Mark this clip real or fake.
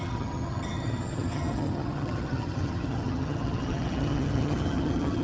fake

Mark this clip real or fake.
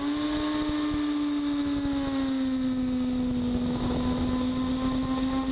real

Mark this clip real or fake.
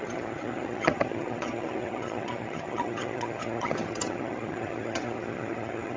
fake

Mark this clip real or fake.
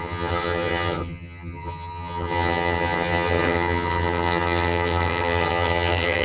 fake